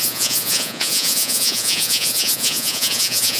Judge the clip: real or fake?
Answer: fake